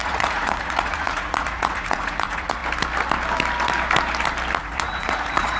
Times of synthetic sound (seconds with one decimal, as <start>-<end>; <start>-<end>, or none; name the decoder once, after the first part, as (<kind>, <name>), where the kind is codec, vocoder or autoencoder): 0.0-2.6 (vocoder, Vocos); 4.6-5.6